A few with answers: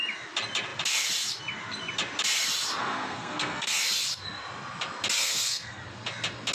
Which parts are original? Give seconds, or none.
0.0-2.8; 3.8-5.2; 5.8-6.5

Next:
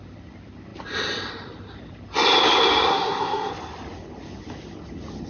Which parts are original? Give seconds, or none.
0.0-2.9; 3.5-5.3

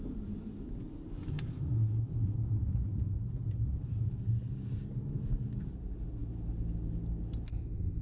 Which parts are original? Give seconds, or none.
0.0-8.0

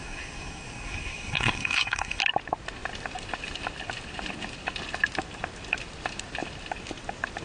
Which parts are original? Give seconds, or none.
2.2-7.4

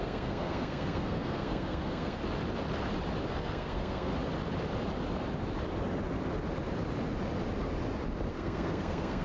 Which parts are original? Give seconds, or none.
2.2-3.3; 4.1-8.3

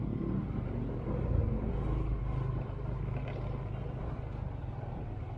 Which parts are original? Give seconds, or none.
0.0-5.4

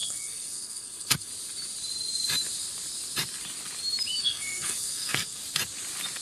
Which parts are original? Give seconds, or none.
1.3-4.2; 5.4-6.2